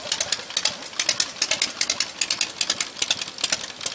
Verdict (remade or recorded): recorded